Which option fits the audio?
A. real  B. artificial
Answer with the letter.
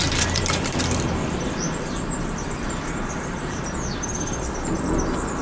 B